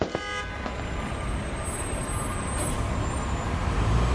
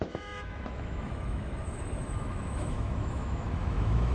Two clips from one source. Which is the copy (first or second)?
second